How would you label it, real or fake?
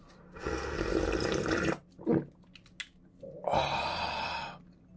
real